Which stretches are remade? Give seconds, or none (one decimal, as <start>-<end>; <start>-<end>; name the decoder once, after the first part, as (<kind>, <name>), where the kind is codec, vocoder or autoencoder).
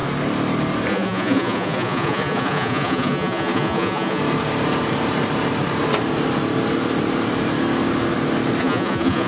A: 0.9-4.2 (vocoder, Vocos); 8.6-9.3